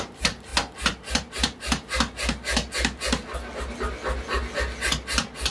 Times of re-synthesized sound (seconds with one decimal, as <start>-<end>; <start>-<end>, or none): none